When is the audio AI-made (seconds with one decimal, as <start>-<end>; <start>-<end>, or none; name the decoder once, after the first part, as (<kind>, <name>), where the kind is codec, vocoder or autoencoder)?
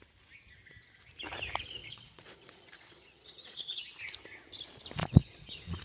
1.8-3.8 (vocoder, Vocos); 5.0-5.8